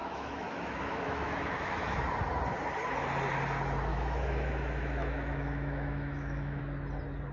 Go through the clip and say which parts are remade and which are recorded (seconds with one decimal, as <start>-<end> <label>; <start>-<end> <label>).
0.0-2.0 remade; 2.0-3.9 recorded; 3.9-6.6 remade; 6.6-7.3 recorded